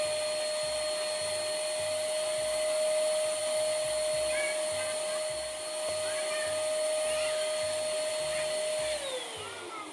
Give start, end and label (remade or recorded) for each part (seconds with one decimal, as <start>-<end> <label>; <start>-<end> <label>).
0.0-9.9 recorded